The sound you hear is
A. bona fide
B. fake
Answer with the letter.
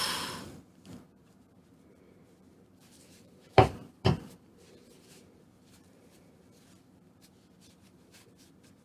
B